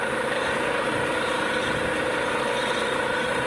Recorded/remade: recorded